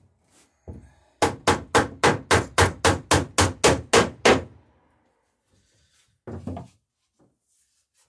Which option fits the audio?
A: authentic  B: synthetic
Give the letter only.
A